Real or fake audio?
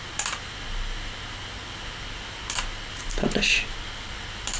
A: real